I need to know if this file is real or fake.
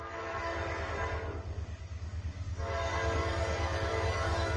fake